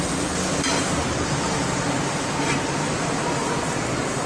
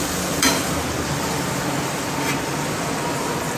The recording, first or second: second